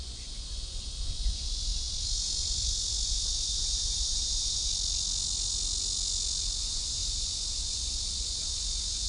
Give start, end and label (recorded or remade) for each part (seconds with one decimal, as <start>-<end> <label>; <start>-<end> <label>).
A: 0.0-4.7 remade; 4.7-6.6 recorded; 6.6-9.1 remade